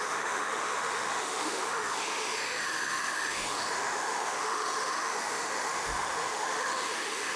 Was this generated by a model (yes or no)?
yes